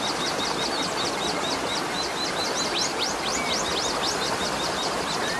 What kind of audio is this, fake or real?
real